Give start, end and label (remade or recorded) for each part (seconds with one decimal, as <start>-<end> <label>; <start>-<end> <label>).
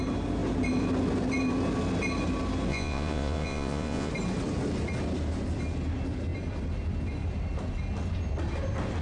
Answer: 0.0-2.7 recorded; 2.7-4.1 remade; 4.1-9.0 recorded